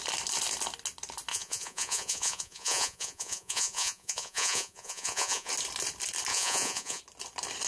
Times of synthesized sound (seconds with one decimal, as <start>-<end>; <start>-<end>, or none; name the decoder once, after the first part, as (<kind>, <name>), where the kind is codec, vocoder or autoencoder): 1.3-5.5 (vocoder, Vocos); 6.3-7.0